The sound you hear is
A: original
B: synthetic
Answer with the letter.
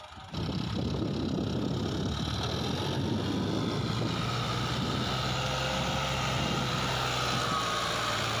A